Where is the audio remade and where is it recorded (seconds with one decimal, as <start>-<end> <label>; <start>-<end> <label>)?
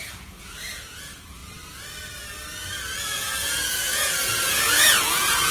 0.0-1.4 remade; 1.4-3.0 recorded; 3.0-5.5 remade